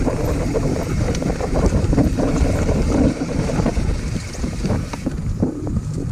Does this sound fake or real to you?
fake